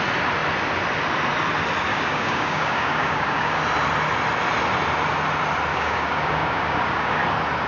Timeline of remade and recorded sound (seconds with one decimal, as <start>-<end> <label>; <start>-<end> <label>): 0.0-1.9 recorded; 1.9-3.6 remade; 3.6-5.7 recorded; 5.7-7.2 remade; 7.2-7.7 recorded